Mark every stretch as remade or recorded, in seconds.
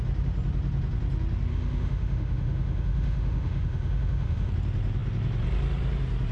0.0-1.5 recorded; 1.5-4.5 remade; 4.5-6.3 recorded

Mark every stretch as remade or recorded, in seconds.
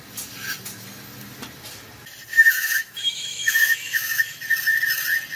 0.0-2.3 recorded; 2.3-4.4 remade; 4.4-5.4 recorded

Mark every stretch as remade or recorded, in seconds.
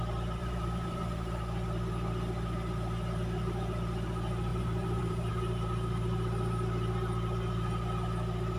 0.0-0.4 recorded; 0.4-1.4 remade; 1.4-4.5 recorded; 4.5-5.3 remade; 5.3-8.6 recorded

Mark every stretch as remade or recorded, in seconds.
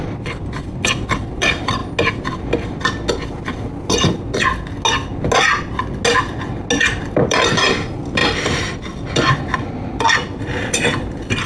0.0-1.8 remade; 1.8-7.0 recorded; 7.0-11.5 remade